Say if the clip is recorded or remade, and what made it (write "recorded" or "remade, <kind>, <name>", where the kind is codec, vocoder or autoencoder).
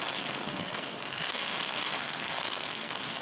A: remade, codec, SNAC